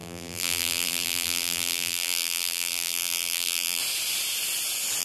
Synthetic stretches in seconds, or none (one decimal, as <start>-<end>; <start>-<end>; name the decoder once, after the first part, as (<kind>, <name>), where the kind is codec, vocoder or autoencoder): 0.0-3.8 (vocoder, BigVGAN v2)